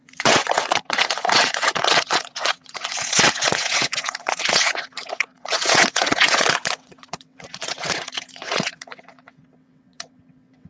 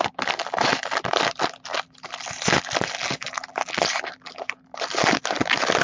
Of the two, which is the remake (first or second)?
first